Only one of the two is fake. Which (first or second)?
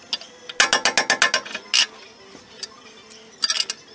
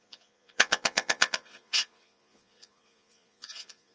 second